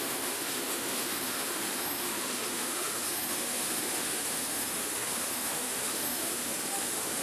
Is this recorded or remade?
remade